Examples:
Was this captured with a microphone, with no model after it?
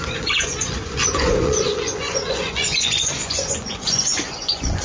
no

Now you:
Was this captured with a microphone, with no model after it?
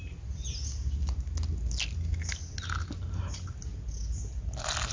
yes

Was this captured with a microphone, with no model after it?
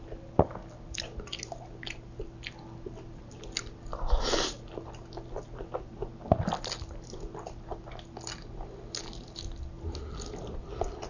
yes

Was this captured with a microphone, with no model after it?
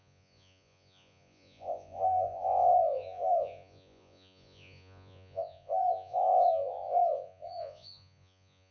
no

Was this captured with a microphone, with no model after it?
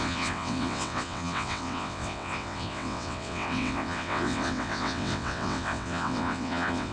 no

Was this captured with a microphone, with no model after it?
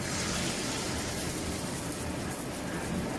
yes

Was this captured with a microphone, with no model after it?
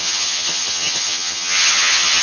no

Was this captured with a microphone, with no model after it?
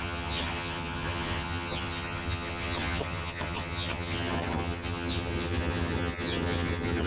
no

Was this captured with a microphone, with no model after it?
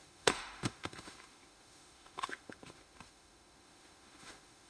no